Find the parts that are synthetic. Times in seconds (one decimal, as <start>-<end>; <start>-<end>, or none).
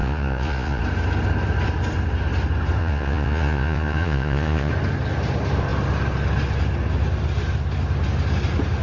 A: 0.0-0.8; 2.8-4.7